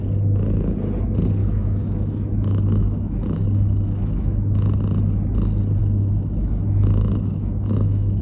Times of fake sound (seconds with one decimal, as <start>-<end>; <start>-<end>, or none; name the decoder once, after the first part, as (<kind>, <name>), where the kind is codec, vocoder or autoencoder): 1.4-4.7 (autoencoder, DAC-VAE); 5.8-8.2